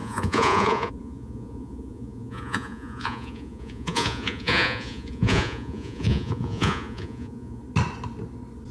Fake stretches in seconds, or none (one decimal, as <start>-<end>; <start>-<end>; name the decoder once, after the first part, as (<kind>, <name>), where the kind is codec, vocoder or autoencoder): 0.0-7.6 (vocoder, Vocos)